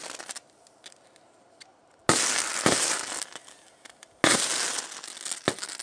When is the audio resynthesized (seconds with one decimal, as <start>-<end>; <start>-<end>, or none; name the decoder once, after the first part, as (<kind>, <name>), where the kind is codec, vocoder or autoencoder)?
none